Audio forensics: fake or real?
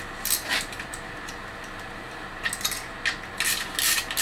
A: real